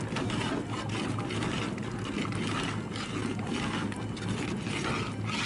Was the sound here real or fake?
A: real